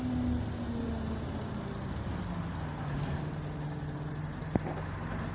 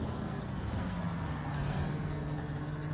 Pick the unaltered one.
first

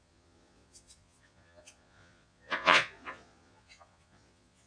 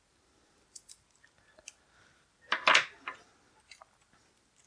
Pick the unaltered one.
second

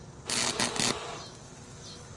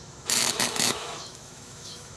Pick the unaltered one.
first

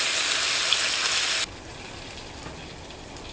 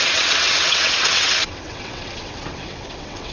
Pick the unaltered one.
first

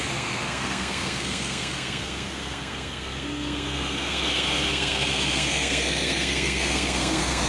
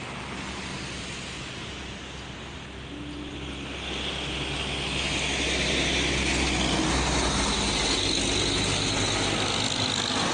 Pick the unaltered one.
second